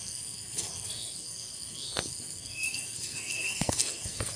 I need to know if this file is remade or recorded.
remade